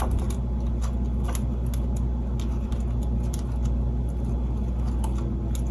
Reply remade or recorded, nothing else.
recorded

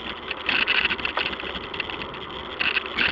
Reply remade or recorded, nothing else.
recorded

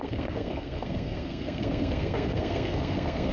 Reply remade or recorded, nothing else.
remade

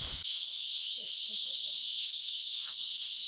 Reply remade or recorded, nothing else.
remade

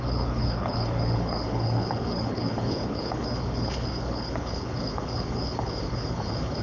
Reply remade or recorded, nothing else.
remade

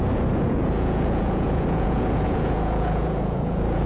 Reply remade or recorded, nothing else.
remade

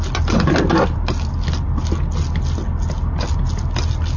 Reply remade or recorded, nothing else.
recorded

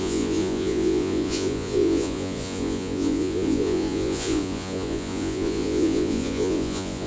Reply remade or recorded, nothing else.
remade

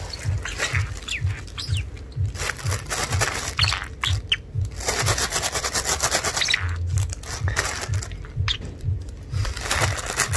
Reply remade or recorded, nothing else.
recorded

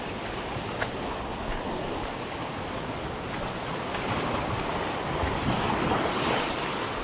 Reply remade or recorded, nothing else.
recorded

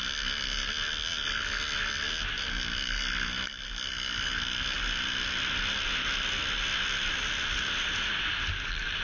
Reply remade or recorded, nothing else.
recorded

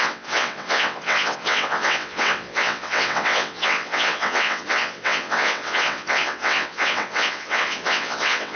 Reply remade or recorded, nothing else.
remade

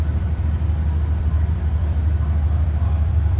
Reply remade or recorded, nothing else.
remade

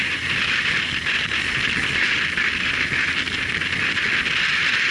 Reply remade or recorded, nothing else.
recorded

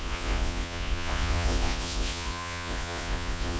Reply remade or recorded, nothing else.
remade